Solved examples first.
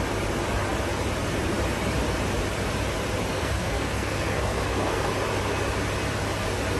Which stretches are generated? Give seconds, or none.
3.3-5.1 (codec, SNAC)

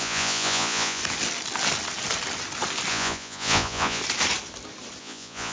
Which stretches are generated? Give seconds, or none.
0.0-1.0 (vocoder, Vocos); 2.9-4.0; 5.0-5.5

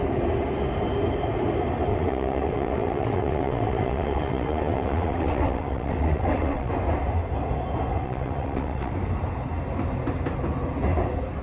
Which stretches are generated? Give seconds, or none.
1.9-6.7 (vocoder, WaveNeXt); 7.9-8.9

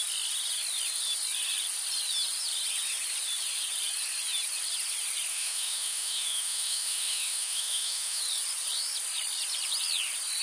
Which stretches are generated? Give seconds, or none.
5.3-8.2 (autoencoder, DAC-VAE)

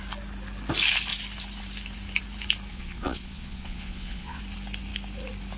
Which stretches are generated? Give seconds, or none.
2.7-4.4 (vocoder, Vocos)

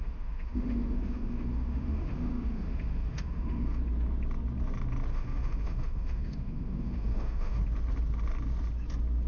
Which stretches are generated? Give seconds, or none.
0.0-3.8 (autoencoder, DAC-VAE); 5.1-7.6

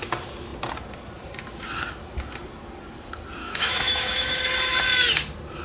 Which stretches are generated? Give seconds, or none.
3.4-4.4 (autoencoder, DAC-VAE)